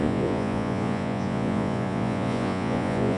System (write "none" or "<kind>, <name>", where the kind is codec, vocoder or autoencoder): vocoder, Vocos